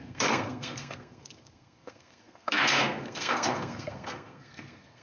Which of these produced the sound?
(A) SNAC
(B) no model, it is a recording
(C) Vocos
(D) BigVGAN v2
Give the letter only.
A